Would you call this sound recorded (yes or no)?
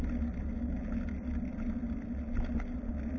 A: yes